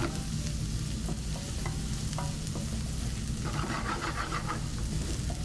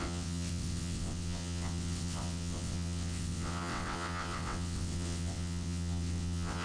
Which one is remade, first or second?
second